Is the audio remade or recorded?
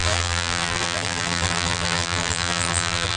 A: remade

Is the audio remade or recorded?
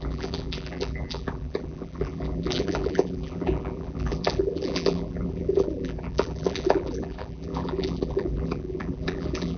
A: remade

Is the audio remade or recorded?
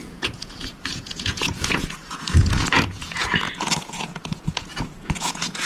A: remade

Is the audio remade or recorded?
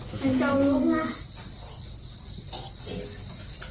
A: recorded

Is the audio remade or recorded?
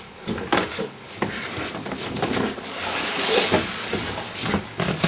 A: remade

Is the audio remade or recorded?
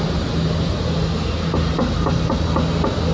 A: recorded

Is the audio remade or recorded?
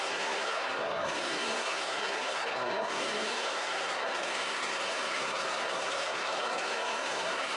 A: remade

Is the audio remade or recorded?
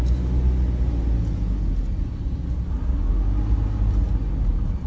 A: recorded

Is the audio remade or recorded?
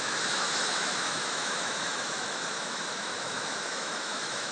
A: remade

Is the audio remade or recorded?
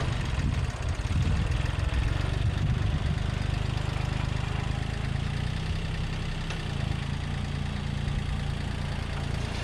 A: recorded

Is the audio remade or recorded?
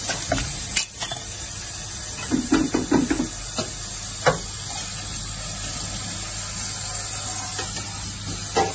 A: recorded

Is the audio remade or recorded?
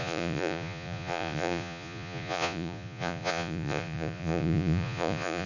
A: remade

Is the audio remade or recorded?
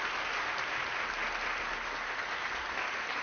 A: recorded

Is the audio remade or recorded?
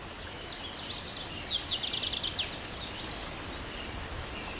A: recorded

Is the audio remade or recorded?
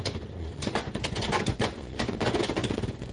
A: remade